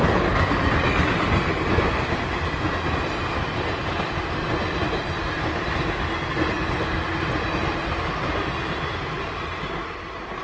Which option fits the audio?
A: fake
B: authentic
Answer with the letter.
B